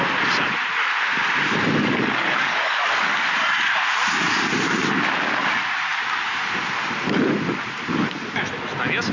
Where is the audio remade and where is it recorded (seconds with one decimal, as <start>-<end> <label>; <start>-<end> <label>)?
0.0-1.8 recorded; 1.8-3.2 remade; 3.2-9.1 recorded